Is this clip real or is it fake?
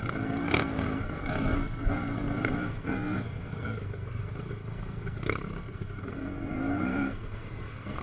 fake